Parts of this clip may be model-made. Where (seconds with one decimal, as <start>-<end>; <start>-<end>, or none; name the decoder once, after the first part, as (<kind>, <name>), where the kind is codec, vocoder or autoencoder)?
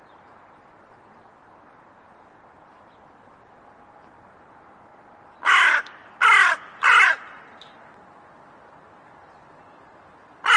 none